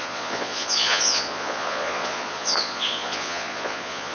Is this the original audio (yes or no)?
no